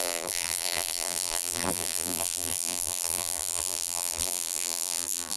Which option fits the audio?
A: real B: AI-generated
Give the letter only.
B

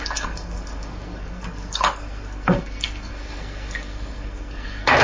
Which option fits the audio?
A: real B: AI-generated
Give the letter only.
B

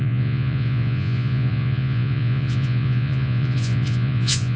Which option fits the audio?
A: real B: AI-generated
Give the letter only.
B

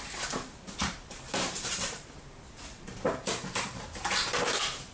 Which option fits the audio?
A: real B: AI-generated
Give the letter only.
B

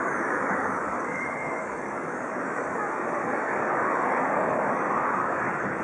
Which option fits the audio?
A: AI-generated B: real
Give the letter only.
A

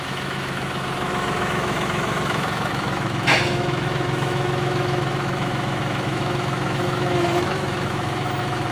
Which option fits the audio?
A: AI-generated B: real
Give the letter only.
A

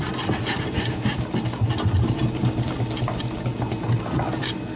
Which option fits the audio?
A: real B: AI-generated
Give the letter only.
A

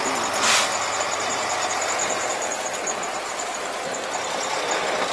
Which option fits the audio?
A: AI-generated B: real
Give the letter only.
B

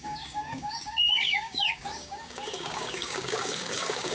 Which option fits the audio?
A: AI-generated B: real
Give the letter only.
A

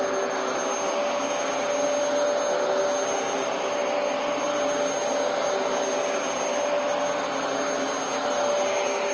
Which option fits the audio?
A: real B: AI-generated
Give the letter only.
A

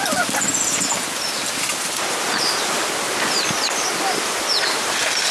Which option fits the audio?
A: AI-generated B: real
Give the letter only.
B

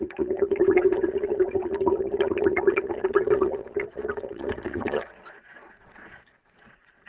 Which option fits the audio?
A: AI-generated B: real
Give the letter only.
A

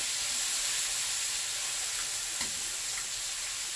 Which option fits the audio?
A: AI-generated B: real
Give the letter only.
B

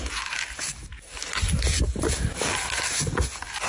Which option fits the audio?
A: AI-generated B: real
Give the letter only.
B